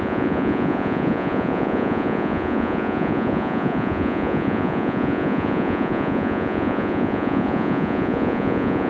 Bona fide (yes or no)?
no